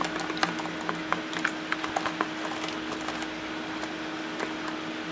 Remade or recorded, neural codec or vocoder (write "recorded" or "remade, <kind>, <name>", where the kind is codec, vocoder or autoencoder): recorded